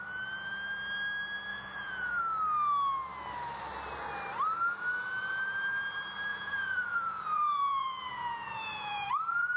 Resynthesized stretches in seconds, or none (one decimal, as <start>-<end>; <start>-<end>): 1.5-2.2; 6.3-9.1